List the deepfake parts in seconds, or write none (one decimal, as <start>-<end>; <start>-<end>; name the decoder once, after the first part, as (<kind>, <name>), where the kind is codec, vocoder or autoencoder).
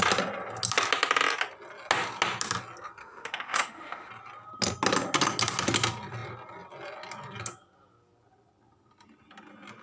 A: 3.0-4.1 (autoencoder, DAC-VAE)